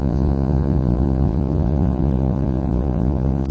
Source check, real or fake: fake